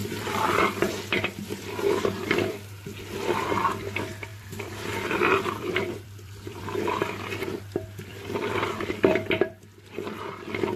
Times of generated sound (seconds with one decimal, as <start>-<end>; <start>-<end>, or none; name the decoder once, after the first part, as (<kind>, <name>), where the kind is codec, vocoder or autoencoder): 0.0-0.6 (vocoder, BigVGAN v2); 4.3-7.6; 8.1-9.5